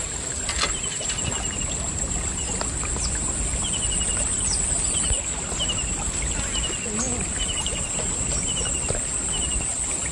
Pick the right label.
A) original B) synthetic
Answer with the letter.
A